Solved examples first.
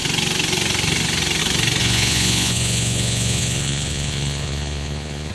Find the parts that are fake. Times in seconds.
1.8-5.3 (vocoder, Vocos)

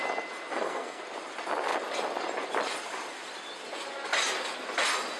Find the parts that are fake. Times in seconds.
0.5-1.0 (codec, SNAC)